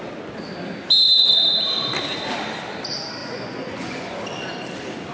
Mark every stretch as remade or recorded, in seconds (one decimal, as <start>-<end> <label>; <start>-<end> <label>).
0.0-3.2 recorded; 3.2-4.2 remade; 4.2-5.1 recorded